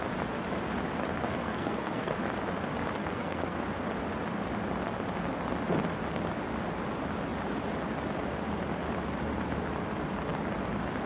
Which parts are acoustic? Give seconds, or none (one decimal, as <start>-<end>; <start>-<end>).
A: 0.0-1.3; 2.1-3.0; 3.6-11.1